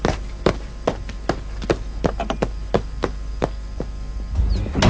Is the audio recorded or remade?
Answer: recorded